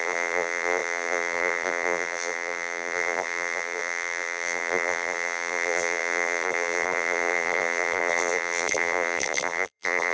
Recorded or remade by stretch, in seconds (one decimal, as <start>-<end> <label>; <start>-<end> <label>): 0.0-10.1 remade